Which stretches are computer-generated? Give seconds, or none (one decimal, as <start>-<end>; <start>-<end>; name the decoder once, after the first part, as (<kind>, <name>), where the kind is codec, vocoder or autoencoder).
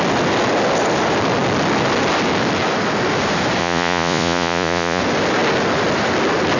3.6-5.0 (vocoder, Vocos)